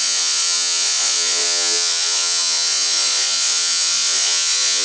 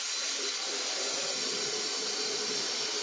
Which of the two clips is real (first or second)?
second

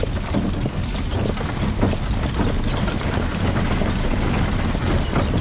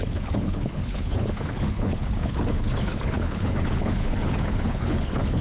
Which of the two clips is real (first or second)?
first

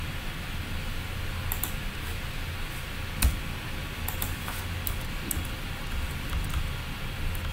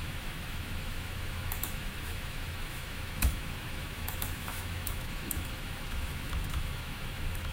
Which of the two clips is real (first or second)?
first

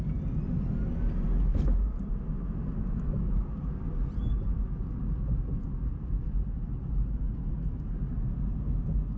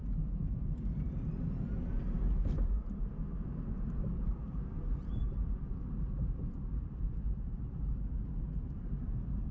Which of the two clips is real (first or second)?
first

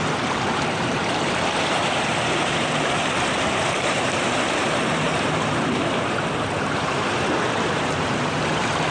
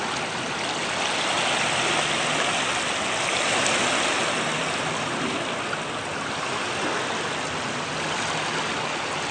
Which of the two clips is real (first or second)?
second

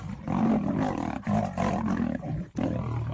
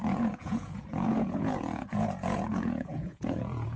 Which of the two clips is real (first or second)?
first